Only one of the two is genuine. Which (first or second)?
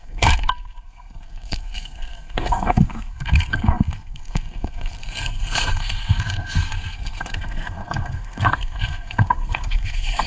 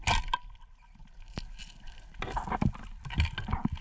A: second